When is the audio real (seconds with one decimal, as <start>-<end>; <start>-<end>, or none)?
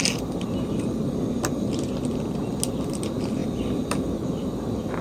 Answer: 0.0-5.0